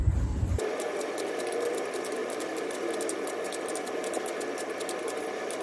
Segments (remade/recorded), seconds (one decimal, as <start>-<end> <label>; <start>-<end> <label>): 0.0-5.6 recorded